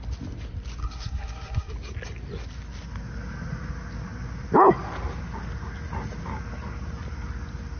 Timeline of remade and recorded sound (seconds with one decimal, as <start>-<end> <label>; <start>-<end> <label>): 0.0-0.8 recorded; 0.8-1.7 remade; 1.7-7.8 recorded